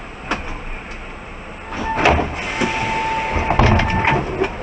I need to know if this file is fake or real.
real